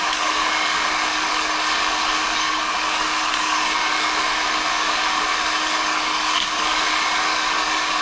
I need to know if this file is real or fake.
fake